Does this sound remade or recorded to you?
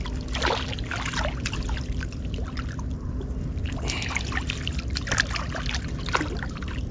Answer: recorded